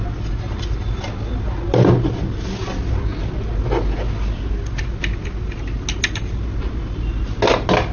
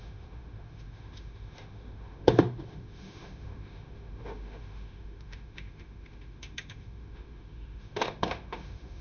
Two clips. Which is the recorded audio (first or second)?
first